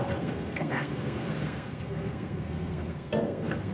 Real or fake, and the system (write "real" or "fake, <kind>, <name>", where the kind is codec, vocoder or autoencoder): fake, codec, SNAC